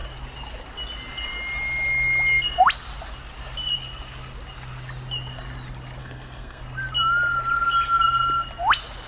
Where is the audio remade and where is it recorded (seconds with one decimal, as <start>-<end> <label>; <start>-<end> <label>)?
0.0-6.0 recorded; 6.0-6.6 remade; 6.6-9.1 recorded